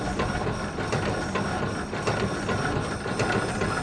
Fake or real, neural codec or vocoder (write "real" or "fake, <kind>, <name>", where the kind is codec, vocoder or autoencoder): real